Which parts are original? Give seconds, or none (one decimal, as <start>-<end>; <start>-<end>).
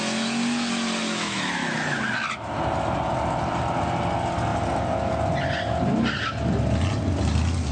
0.0-1.0; 2.0-7.7